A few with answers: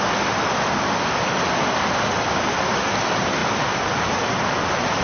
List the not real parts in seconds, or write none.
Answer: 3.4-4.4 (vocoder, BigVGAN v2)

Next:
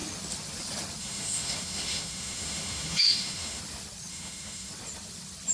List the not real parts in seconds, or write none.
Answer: 1.0-3.6 (autoencoder, DAC-VAE); 4.1-4.7

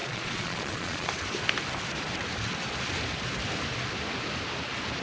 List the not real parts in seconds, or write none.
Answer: 0.0-1.1 (vocoder, Vocos)

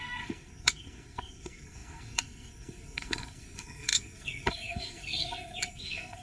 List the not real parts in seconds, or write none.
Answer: 0.0-6.2 (codec, SNAC)

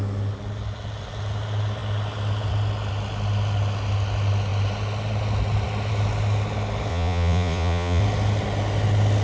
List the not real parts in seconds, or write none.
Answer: 6.9-8.0 (vocoder, Vocos)

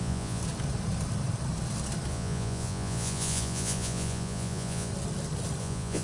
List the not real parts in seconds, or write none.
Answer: 0.0-0.4 (vocoder, Vocos); 2.1-4.9; 5.6-6.0